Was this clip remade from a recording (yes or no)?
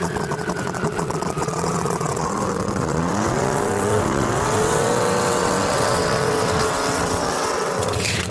yes